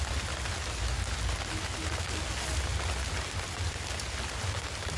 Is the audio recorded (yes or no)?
yes